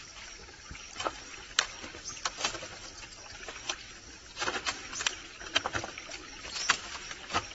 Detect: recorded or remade recorded